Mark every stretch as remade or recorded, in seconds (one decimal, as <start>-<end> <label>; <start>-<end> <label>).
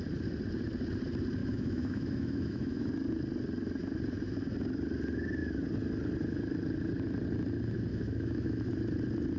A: 0.0-1.4 recorded; 1.4-2.9 remade; 2.9-7.9 recorded; 7.9-8.7 remade; 8.7-9.4 recorded